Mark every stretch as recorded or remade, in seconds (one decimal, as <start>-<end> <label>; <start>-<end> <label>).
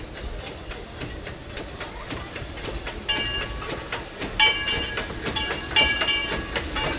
0.0-1.4 recorded; 1.4-2.8 remade; 2.8-7.0 recorded